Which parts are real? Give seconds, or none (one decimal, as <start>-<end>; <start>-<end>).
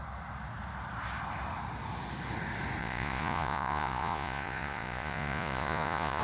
0.0-2.8